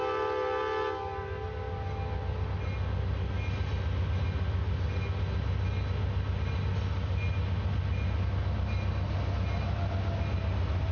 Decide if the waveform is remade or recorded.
recorded